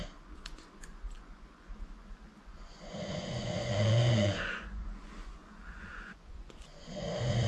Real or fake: fake